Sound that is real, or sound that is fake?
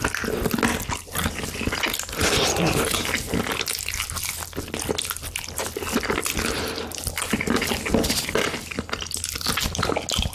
real